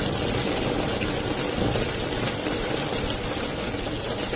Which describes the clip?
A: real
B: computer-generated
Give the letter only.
A